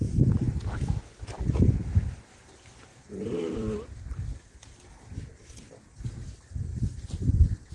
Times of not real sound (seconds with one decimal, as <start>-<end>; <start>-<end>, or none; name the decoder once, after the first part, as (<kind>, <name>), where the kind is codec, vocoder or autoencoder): 2.9-4.2 (vocoder, BigVGAN v2)